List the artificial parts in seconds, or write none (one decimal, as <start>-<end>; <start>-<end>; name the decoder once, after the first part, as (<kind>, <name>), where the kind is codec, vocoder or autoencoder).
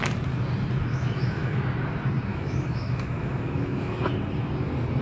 0.9-1.6 (autoencoder, DAC-VAE); 2.3-4.1